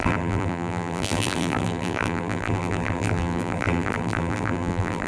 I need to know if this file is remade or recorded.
remade